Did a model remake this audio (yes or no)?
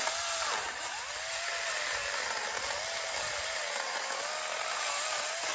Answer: no